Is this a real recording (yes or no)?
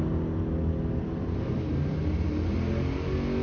yes